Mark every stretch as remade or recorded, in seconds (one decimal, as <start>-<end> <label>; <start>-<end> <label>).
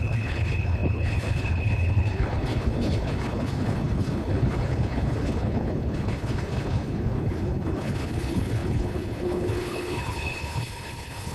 0.0-11.3 remade